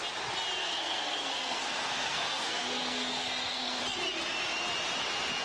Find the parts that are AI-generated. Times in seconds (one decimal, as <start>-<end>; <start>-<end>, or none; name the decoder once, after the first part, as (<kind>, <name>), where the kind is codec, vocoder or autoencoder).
0.6-3.8 (codec, SNAC)